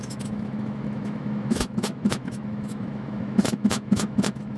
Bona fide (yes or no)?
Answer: no